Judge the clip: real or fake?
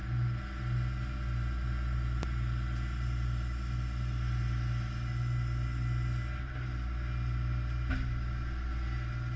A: real